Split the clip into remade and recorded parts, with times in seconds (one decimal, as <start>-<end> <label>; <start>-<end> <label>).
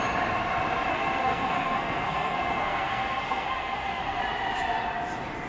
0.0-0.9 recorded; 0.9-4.2 remade; 4.2-5.5 recorded